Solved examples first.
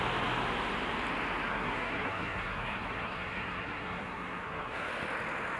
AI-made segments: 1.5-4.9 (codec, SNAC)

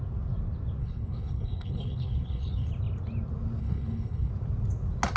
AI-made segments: 0.8-2.7 (codec, HILCodec); 3.6-4.3